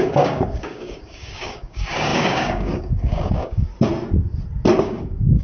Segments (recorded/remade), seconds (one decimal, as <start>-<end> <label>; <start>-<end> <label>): 0.0-3.7 remade; 3.7-4.8 recorded; 4.8-5.4 remade